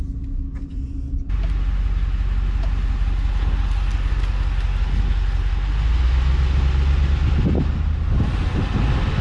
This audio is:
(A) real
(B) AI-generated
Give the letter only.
A